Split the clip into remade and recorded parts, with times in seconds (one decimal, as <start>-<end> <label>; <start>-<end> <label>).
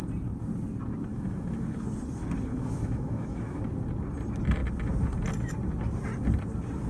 0.0-1.1 recorded; 1.1-1.7 remade; 1.7-2.5 recorded; 2.5-3.6 remade; 3.6-6.9 recorded